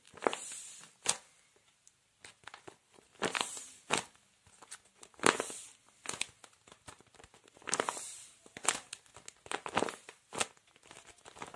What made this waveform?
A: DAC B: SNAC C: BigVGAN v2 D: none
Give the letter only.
D